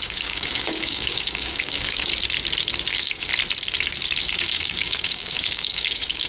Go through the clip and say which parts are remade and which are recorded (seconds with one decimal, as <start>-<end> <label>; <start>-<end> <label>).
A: 0.0-2.1 remade; 2.1-2.9 recorded; 2.9-3.3 remade; 3.3-4.2 recorded; 4.2-6.3 remade